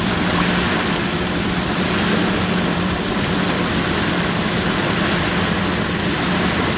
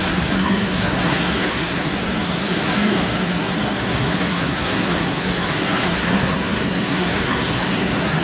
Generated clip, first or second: second